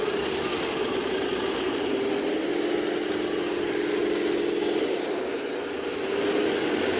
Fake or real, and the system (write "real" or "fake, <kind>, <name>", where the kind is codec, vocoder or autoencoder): real